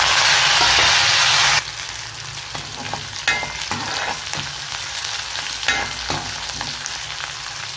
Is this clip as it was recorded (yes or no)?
yes